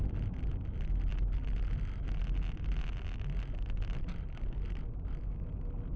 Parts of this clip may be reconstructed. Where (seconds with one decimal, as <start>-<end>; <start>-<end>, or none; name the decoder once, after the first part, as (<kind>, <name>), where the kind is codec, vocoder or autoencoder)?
none